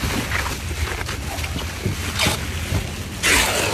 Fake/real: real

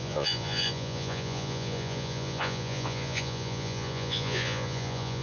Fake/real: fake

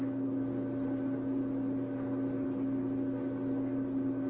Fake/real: real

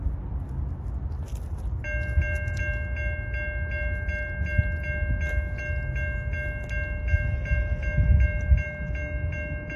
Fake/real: real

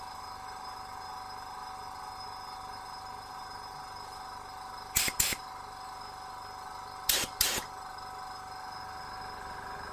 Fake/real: real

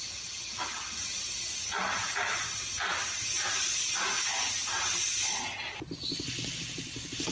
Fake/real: real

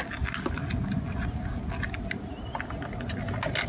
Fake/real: real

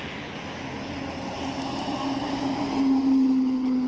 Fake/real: real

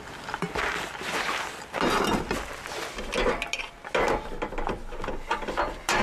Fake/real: real